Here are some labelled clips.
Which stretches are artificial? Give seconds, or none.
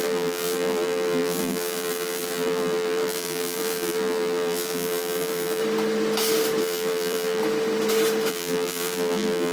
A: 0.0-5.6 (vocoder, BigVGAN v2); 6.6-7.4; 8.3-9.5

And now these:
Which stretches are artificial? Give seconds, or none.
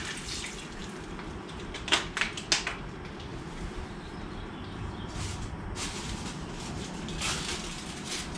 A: none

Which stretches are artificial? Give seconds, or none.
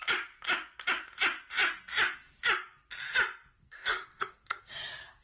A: 3.6-4.7 (codec, SNAC)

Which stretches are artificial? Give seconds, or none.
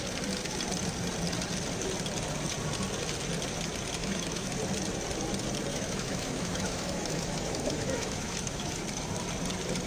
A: 4.0-4.5 (autoencoder, DAC-VAE); 5.7-8.8